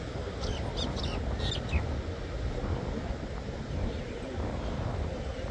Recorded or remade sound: recorded